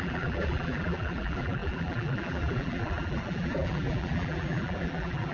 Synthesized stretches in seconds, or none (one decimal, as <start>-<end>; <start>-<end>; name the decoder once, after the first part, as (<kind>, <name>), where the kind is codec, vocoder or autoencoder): 0.0-5.3 (vocoder, BigVGAN v2)